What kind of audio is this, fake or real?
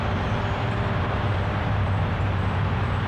fake